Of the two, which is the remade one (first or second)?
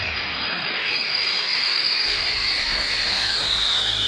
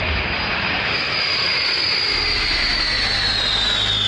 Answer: first